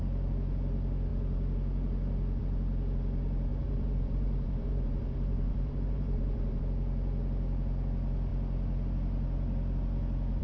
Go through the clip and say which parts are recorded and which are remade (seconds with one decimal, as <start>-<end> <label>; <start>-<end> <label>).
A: 0.0-3.5 recorded; 3.5-6.6 remade; 6.6-10.4 recorded